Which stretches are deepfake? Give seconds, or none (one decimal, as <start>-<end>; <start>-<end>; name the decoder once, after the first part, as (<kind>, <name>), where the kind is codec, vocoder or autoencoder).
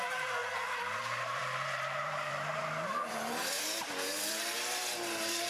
0.0-0.4 (vocoder, BigVGAN v2); 1.0-5.5